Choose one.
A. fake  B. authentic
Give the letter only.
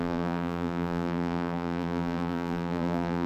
A